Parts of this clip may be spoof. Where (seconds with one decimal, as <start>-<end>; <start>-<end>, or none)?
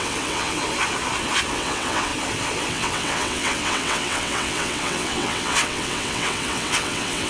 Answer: 0.0-0.6; 1.5-2.1; 2.7-7.3